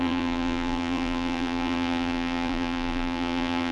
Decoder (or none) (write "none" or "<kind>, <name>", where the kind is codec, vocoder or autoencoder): vocoder, BigVGAN v2